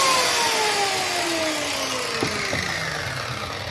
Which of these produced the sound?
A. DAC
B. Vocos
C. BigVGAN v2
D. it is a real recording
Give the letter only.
D